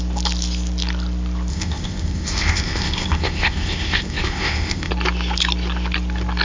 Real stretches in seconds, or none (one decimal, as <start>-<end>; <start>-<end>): 0.0-1.5; 4.9-6.4